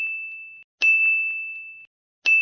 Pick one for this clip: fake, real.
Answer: real